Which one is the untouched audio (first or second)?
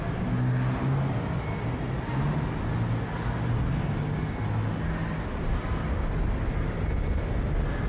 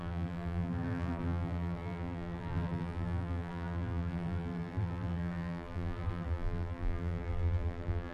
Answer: first